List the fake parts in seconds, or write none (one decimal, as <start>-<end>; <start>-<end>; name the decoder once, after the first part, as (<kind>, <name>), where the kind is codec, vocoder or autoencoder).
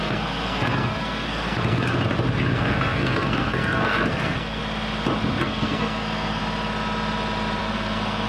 0.0-1.9 (codec, SNAC); 2.5-4.6; 5.4-6.4; 7.6-8.3